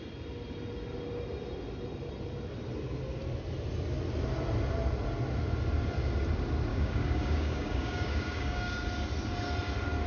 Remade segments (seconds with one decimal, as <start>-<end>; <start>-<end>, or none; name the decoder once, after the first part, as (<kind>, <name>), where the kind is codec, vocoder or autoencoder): 6.7-8.7 (codec, DAC)